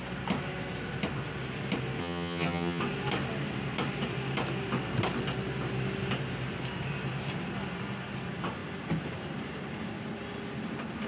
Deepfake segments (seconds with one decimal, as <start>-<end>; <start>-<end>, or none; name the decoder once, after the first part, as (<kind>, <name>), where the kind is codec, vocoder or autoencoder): 2.0-2.8 (vocoder, HiFi-GAN)